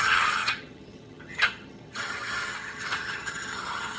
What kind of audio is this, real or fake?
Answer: fake